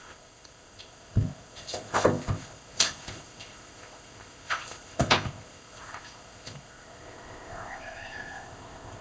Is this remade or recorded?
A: remade